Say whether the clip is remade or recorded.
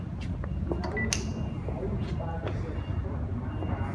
recorded